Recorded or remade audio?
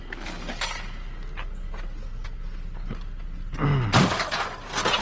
recorded